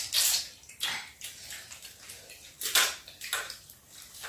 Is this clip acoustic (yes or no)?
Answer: yes